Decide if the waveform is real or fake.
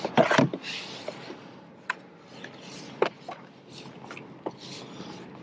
real